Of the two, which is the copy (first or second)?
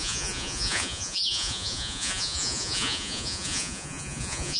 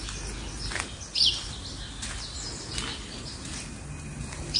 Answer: first